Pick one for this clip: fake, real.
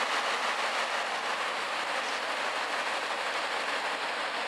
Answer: real